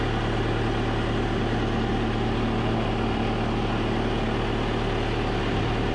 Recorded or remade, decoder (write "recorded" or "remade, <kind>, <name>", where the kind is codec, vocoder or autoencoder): recorded